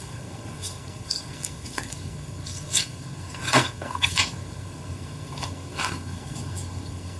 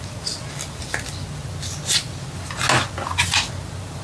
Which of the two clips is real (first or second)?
second